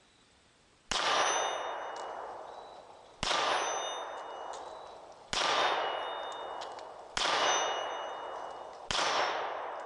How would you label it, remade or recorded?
recorded